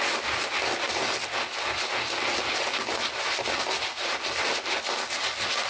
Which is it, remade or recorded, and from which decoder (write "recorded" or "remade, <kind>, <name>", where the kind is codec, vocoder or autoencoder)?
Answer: recorded